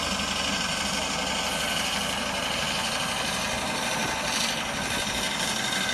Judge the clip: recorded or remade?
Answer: recorded